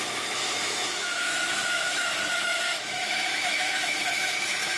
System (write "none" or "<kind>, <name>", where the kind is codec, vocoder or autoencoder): autoencoder, DAC-VAE